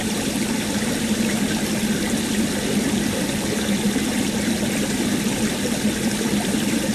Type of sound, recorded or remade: recorded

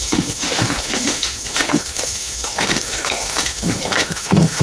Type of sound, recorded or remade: remade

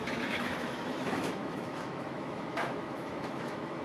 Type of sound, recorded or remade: remade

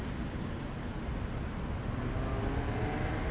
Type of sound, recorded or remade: recorded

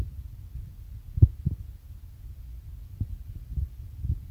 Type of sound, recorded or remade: recorded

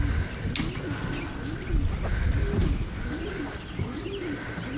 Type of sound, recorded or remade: recorded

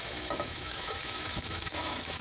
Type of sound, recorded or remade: remade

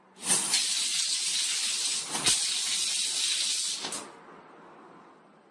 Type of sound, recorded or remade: recorded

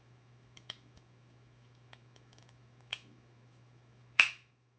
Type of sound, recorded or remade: remade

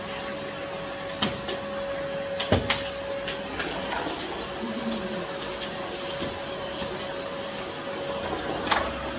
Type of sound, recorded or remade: recorded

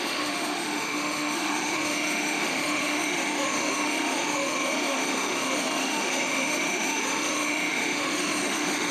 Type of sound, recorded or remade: remade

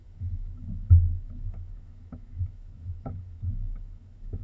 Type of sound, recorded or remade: remade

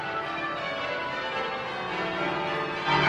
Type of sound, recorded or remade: recorded